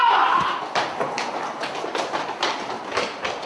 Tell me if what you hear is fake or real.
real